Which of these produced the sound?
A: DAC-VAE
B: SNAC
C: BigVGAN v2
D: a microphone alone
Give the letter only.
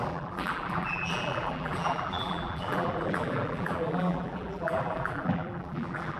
C